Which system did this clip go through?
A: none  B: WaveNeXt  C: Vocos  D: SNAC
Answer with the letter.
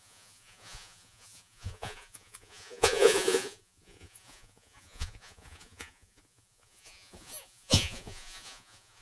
C